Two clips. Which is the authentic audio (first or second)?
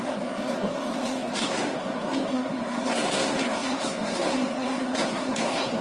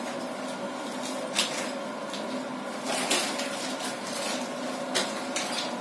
second